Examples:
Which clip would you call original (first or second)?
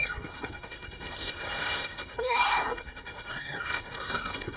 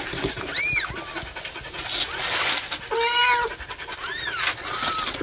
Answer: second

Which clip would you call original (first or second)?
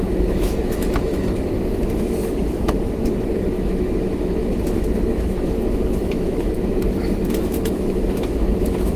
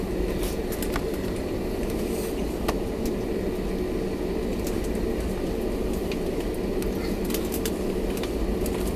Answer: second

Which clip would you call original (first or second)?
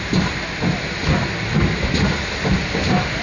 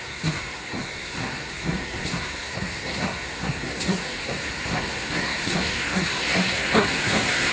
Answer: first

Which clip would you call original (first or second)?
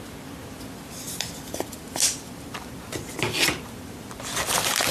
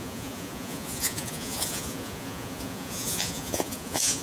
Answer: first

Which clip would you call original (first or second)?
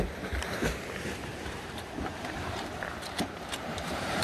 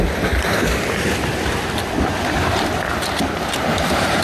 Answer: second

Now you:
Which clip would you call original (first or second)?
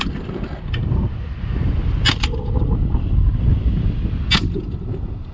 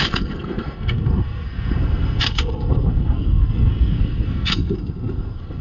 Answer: first